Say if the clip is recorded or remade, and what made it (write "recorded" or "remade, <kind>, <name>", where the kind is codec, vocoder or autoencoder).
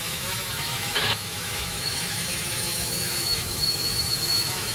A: remade, autoencoder, DAC-VAE